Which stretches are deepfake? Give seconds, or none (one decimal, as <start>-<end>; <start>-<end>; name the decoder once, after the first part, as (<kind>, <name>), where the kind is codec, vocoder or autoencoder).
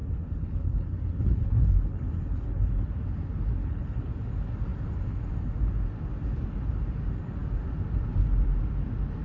0.0-2.9 (codec, HILCodec); 3.6-4.1